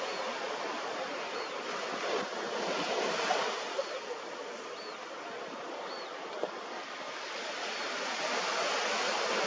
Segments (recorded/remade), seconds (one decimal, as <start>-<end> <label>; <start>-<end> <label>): 0.0-9.5 recorded